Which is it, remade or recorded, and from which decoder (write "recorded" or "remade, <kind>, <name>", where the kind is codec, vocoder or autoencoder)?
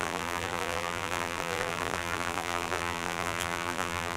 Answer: remade, vocoder, BigVGAN v2